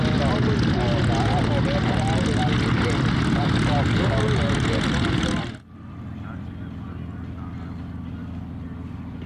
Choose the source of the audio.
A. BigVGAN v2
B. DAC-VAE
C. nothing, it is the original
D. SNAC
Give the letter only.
C